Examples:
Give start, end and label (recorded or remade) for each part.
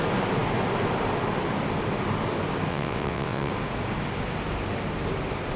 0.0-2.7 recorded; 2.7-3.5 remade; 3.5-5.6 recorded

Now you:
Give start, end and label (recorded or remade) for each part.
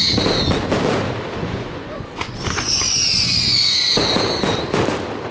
0.0-1.4 recorded; 1.4-4.1 remade; 4.1-5.3 recorded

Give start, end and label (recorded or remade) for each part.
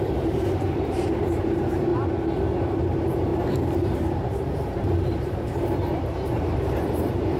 0.0-1.9 remade; 1.9-2.6 recorded; 2.6-7.4 remade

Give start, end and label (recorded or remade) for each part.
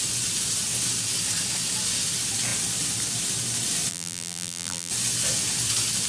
0.0-3.9 recorded; 3.9-4.9 remade; 4.9-6.1 recorded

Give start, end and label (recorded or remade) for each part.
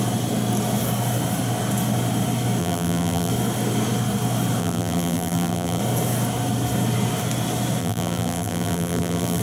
0.0-2.6 recorded; 2.6-3.3 remade; 3.3-4.6 recorded; 4.6-5.8 remade; 5.8-7.8 recorded; 7.8-9.4 remade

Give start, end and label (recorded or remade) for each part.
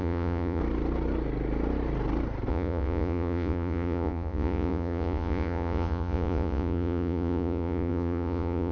0.0-0.6 remade; 0.6-2.5 recorded; 2.5-8.7 remade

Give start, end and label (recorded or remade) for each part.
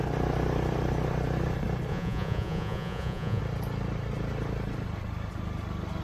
0.0-1.9 recorded; 1.9-3.4 remade; 3.4-6.0 recorded